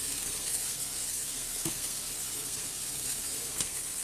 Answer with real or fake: fake